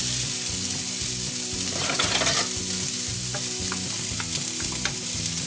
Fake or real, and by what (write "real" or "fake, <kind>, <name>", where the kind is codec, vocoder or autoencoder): real